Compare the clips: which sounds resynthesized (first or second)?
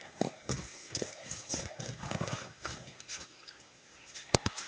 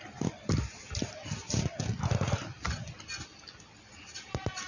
first